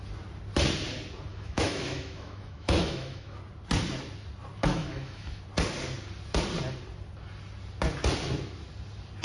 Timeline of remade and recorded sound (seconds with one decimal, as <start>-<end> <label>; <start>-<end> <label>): 0.0-1.3 recorded; 1.3-3.4 remade; 3.4-4.6 recorded; 4.6-5.4 remade; 5.4-9.2 recorded